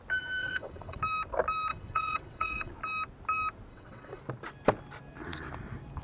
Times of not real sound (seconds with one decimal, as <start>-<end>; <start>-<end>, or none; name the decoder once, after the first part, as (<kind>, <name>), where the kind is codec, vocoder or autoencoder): 0.4-1.0 (vocoder, WaveNeXt); 1.7-2.7; 3.7-4.2